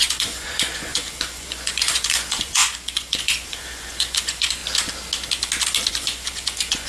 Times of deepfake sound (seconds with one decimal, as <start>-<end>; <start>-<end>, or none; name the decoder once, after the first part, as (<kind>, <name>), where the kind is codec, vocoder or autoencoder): 0.0-4.6 (vocoder, Vocos); 5.9-6.9